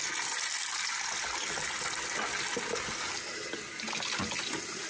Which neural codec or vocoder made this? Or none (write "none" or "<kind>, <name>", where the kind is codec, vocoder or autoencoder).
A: none